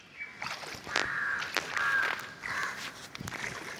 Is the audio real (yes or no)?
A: yes